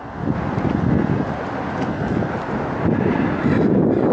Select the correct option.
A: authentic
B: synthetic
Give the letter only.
A